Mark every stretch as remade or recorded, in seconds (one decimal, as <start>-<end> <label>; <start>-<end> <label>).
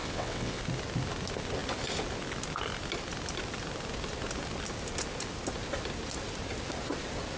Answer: 0.0-0.6 remade; 0.6-7.4 recorded